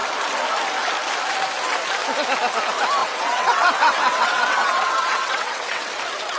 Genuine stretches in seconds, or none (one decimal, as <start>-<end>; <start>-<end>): 0.0-3.0; 5.9-6.4